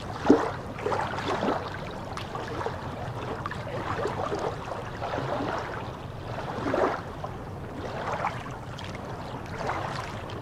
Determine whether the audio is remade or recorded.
recorded